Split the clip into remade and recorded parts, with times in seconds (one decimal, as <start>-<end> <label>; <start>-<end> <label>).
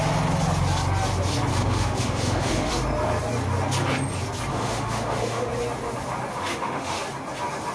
0.0-1.5 recorded; 1.5-2.7 remade; 2.7-4.5 recorded; 4.5-5.5 remade; 5.5-6.3 recorded; 6.3-7.0 remade; 7.0-7.7 recorded